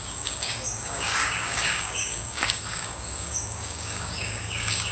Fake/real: fake